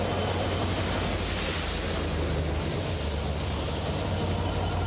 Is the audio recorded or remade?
recorded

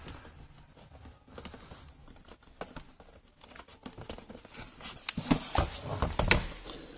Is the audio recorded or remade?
recorded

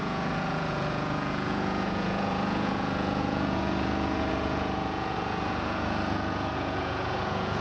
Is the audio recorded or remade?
remade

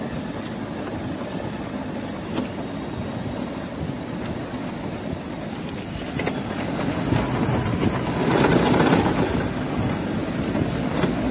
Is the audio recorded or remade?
recorded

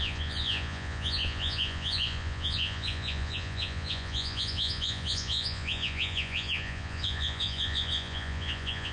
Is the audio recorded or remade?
remade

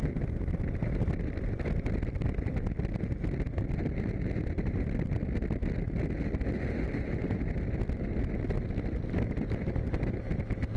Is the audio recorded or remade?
recorded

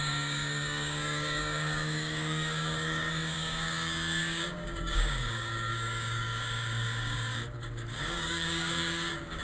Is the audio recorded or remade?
remade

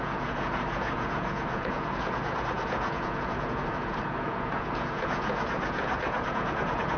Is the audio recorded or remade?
remade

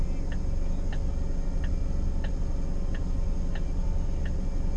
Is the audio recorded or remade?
recorded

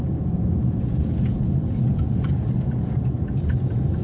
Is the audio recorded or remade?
remade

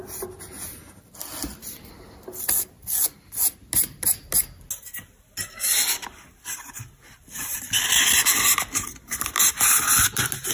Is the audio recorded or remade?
recorded